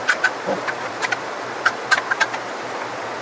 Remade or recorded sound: remade